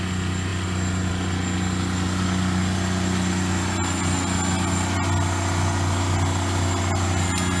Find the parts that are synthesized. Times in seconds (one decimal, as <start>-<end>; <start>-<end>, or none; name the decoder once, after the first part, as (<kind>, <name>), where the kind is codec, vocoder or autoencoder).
none